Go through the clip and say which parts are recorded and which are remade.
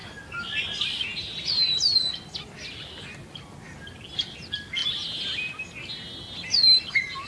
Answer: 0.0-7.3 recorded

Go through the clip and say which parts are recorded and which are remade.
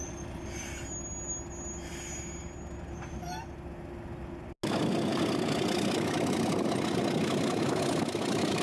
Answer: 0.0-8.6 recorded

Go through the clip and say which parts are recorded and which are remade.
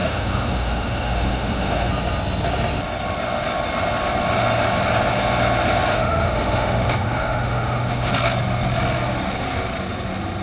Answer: 0.0-1.9 remade; 1.9-5.9 recorded; 5.9-8.1 remade; 8.1-10.4 recorded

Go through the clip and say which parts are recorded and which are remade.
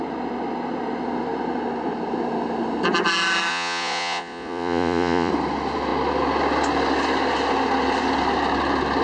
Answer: 0.0-3.5 recorded; 3.5-5.3 remade; 5.3-9.0 recorded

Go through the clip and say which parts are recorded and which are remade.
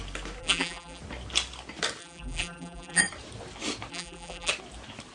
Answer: 0.0-0.4 recorded; 0.4-1.0 remade; 1.0-2.0 recorded; 2.0-3.0 remade; 3.0-3.9 recorded; 3.9-4.5 remade; 4.5-5.1 recorded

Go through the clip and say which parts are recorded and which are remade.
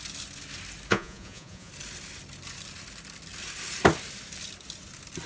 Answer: 0.0-0.9 recorded; 0.9-1.7 remade; 1.7-5.3 recorded